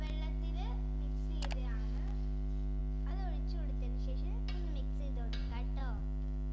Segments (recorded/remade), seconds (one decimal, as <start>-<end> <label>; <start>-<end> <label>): 0.0-5.4 recorded; 5.4-6.0 remade; 6.0-6.5 recorded